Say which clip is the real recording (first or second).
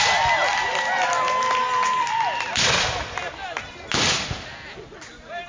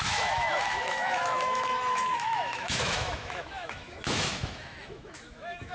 first